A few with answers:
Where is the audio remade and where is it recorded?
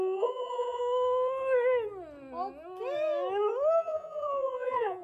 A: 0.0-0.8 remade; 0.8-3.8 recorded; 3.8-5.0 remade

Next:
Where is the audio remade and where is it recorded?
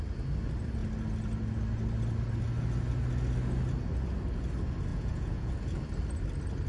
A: 0.0-4.9 recorded; 4.9-5.5 remade; 5.5-6.7 recorded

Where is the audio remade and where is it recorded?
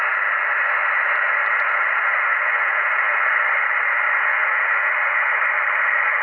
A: 0.0-2.0 recorded; 2.0-3.4 remade; 3.4-4.3 recorded; 4.3-5.3 remade; 5.3-6.2 recorded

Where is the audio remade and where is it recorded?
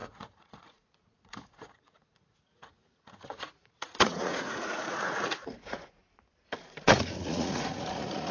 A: 0.0-6.0 remade; 6.0-6.6 recorded; 6.6-8.3 remade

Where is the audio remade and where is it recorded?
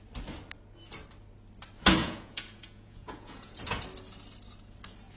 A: 0.0-2.0 recorded; 2.0-3.8 remade; 3.8-5.2 recorded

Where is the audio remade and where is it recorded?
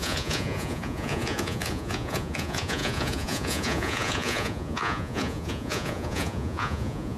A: 0.0-7.2 remade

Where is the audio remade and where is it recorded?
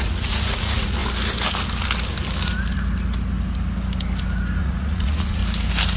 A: 0.0-1.0 remade; 1.0-4.6 recorded; 4.6-5.4 remade; 5.4-6.0 recorded